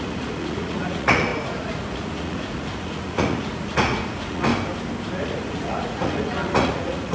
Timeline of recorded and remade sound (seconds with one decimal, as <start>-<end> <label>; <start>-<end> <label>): 0.0-4.5 remade; 4.5-5.2 recorded; 5.2-7.1 remade